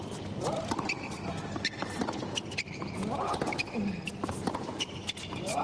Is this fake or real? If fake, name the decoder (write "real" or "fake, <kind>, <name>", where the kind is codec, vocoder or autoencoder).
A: real